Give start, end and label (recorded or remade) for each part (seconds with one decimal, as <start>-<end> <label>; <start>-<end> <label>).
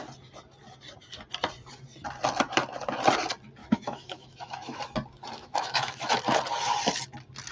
0.0-3.6 recorded; 3.6-4.8 remade; 4.8-5.4 recorded; 5.4-6.1 remade; 6.1-7.5 recorded